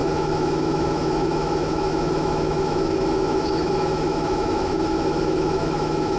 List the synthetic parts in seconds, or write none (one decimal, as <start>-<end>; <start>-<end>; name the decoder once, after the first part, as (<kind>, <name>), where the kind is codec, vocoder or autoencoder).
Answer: 0.0-6.2 (autoencoder, DAC-VAE)